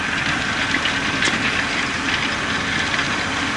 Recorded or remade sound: recorded